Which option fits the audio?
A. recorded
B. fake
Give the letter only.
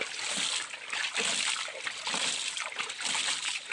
A